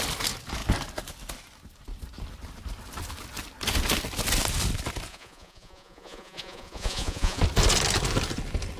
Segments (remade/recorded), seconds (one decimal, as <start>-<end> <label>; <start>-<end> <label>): 0.0-5.1 recorded; 5.1-7.4 remade; 7.4-8.8 recorded